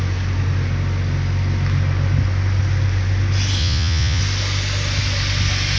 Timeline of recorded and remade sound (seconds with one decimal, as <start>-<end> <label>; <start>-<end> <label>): 0.0-3.6 recorded; 3.6-4.2 remade; 4.2-5.8 recorded